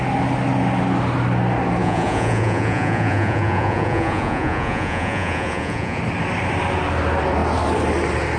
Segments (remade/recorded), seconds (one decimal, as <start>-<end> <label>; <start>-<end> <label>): 0.0-1.8 recorded; 1.8-6.0 remade; 6.0-8.4 recorded